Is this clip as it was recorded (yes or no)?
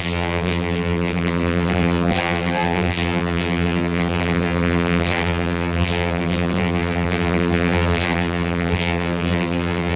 no